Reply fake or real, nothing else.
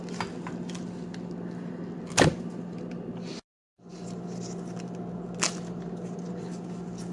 real